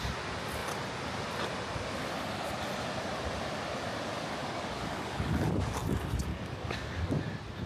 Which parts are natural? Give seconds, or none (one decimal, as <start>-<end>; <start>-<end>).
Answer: 0.0-4.4; 5.7-6.3; 7.2-7.7